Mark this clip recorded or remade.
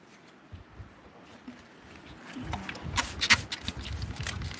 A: recorded